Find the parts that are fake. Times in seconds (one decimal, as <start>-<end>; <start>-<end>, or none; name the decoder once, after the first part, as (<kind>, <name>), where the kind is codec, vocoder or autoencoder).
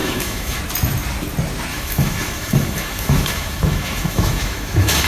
0.0-0.6 (autoencoder, DAC-VAE); 1.7-5.1